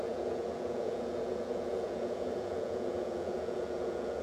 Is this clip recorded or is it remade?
remade